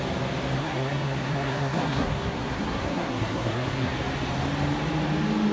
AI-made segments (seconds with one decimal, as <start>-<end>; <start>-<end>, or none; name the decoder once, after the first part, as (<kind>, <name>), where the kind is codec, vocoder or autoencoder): 0.6-3.9 (codec, SNAC)